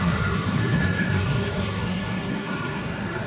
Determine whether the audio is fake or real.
fake